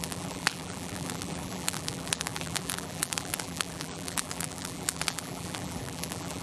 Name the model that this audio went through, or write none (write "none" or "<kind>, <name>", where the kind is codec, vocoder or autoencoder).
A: vocoder, BigVGAN v2